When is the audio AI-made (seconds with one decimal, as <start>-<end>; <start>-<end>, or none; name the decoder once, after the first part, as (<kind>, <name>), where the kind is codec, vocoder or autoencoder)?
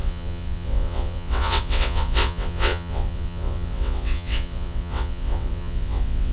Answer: 0.0-6.3 (vocoder, WaveNeXt)